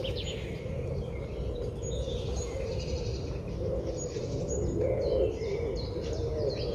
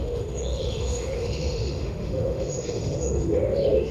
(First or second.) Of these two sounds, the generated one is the second